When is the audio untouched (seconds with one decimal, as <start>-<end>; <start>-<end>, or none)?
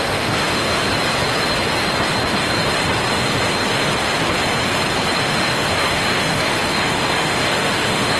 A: 0.8-5.2